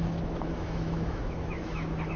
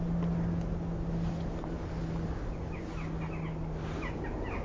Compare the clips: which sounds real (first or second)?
second